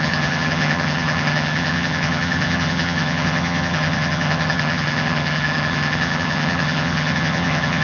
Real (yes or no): no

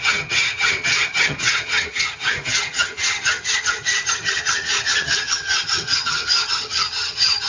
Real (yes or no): no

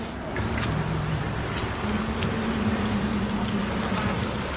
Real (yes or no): yes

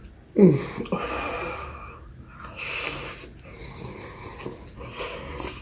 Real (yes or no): yes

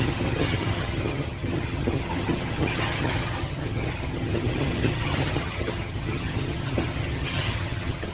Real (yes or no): no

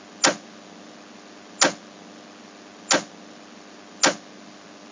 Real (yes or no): yes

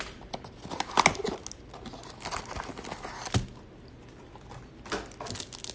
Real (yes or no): yes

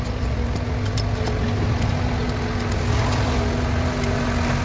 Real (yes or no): yes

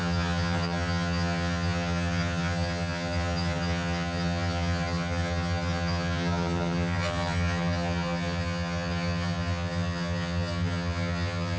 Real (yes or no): no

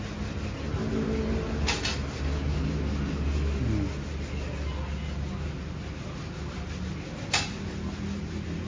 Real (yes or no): yes